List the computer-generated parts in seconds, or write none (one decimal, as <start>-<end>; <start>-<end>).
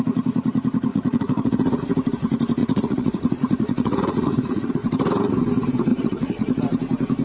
0.9-1.8; 2.6-4.7; 5.9-6.6